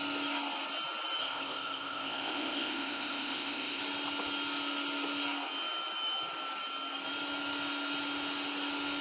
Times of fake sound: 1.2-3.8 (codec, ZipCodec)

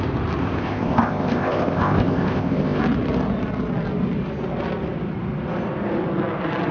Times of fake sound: 0.4-2.8 (codec, ZipCodec)